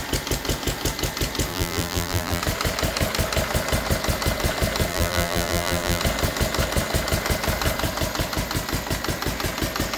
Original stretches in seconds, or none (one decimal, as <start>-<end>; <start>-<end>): 0.0-1.5; 2.4-4.9; 6.0-10.0